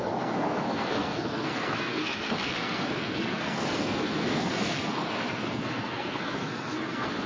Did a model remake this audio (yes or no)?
yes